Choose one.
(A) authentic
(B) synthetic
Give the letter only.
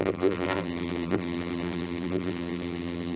B